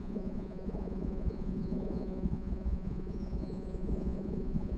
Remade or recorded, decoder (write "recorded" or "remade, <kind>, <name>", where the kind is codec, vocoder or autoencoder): remade, vocoder, Vocos